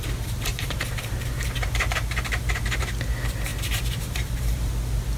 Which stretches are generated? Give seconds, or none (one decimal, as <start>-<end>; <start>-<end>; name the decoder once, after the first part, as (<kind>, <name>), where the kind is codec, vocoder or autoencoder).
0.5-3.0 (vocoder, BigVGAN v2); 3.5-4.7